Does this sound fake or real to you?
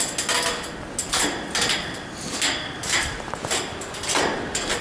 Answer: real